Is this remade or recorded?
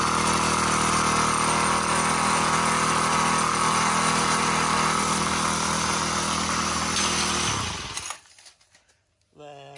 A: recorded